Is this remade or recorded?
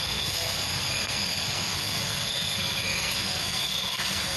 remade